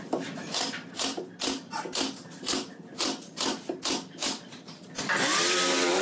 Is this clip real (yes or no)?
yes